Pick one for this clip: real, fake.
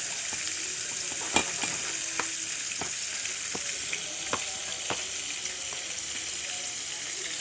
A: real